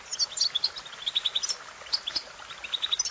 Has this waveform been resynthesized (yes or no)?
no